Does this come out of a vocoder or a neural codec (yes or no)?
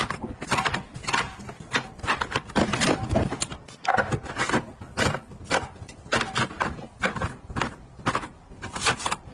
no